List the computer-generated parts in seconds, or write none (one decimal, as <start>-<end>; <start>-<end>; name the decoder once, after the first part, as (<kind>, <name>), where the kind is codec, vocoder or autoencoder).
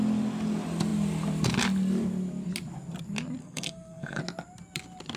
3.4-4.2 (codec, SNAC)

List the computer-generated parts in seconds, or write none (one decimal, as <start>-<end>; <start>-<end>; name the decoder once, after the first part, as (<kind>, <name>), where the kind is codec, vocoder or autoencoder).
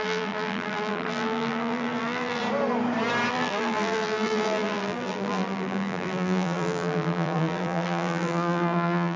0.0-2.4 (vocoder, BigVGAN v2); 3.3-9.2